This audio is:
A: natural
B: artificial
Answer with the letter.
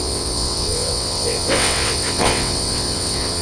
B